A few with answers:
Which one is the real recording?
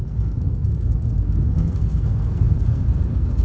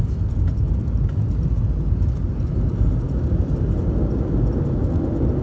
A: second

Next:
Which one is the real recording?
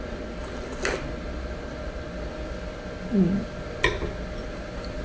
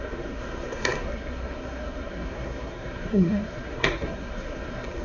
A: first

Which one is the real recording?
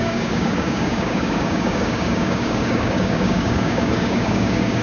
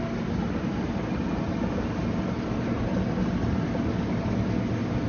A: second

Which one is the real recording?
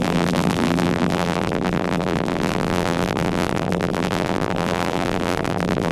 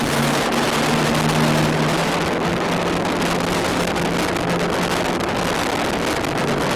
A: second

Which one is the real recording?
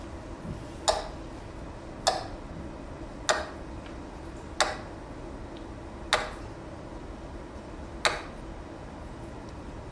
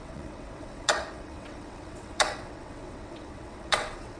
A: first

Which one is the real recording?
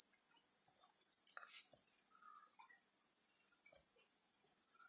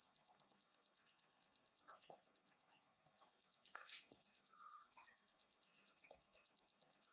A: first